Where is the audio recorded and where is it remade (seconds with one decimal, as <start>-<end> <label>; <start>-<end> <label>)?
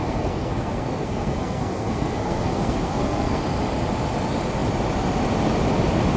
0.0-3.4 remade; 3.4-6.2 recorded